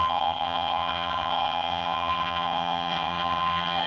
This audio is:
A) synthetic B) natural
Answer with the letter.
A